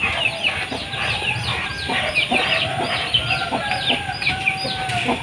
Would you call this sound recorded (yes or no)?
yes